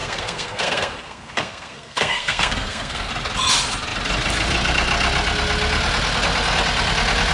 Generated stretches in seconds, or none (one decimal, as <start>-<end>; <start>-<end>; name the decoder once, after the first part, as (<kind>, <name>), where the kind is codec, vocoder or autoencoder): 0.0-3.1 (codec, SNAC)